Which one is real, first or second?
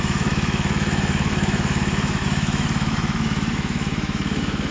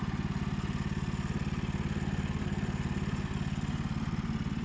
second